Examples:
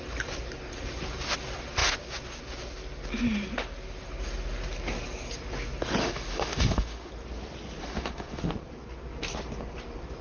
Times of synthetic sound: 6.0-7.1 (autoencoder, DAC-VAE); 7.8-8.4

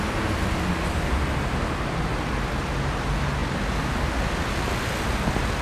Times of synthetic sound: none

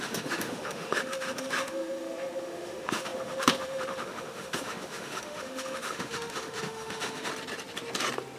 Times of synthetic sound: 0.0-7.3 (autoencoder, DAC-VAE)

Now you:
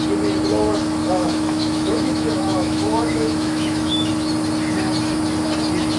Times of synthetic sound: 1.0-4.1 (autoencoder, DAC-VAE)

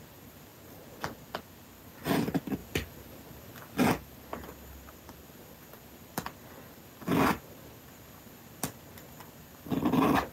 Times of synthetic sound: none

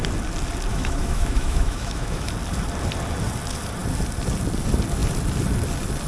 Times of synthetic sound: 0.7-2.3 (autoencoder, DAC-VAE)